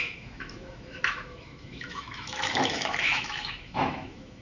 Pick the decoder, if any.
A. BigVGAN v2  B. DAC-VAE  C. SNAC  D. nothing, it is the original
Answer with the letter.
B